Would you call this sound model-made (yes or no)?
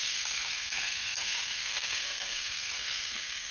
yes